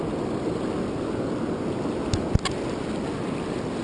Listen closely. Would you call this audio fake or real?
real